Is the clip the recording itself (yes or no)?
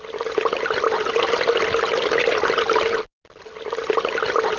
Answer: yes